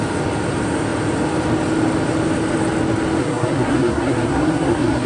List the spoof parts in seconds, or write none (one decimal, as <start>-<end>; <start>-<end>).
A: 3.2-5.1